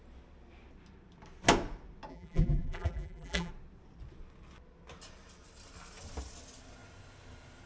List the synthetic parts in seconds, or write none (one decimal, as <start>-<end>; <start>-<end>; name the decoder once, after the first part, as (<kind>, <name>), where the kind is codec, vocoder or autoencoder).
2.1-3.5 (vocoder, BigVGAN v2)